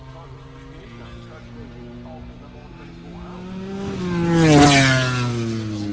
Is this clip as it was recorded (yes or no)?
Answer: yes